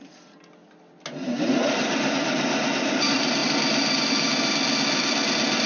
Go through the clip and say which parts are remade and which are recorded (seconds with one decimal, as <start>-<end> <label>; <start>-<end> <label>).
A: 0.0-5.7 recorded